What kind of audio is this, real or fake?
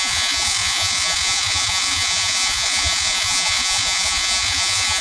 fake